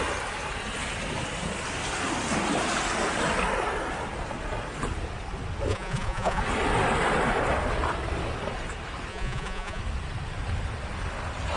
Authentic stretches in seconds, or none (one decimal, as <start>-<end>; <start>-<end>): 0.0-5.7; 6.4-9.1; 9.8-11.6